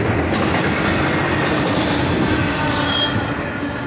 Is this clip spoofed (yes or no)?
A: no